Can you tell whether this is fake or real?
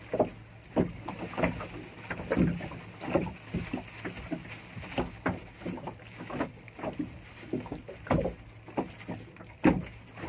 real